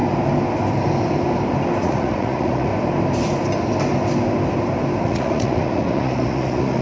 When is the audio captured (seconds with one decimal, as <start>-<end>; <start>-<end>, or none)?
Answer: 0.0-1.8; 2.7-5.0